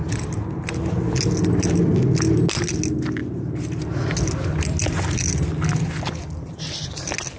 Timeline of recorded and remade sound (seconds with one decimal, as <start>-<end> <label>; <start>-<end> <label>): 0.0-3.2 recorded; 3.2-3.8 remade; 3.8-7.4 recorded